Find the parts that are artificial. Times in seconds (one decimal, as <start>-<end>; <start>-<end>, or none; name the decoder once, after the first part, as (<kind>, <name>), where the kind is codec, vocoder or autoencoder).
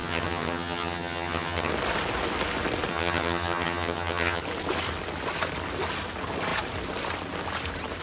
0.0-1.7 (vocoder, HiFi-GAN); 2.9-4.4